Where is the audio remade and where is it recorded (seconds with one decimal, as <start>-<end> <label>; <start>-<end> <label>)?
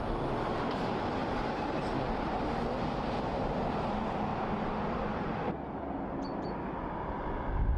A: 0.0-7.8 recorded